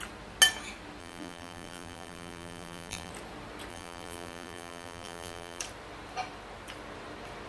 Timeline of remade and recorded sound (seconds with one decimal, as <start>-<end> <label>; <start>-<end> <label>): 0.0-1.0 recorded; 1.0-3.1 remade; 3.1-3.7 recorded; 3.7-5.6 remade; 5.6-7.5 recorded